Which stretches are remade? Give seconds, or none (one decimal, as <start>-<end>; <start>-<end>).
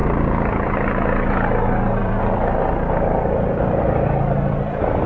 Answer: 2.0-5.1